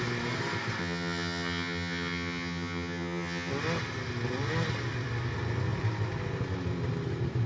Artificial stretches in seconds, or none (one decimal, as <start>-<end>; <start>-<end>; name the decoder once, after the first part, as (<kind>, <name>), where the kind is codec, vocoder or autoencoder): 0.8-3.5 (vocoder, HiFi-GAN)